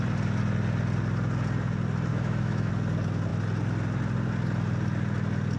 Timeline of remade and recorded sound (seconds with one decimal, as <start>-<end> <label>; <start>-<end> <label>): 0.0-2.1 recorded; 2.1-2.7 remade; 2.7-5.6 recorded